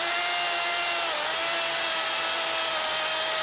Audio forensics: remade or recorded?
recorded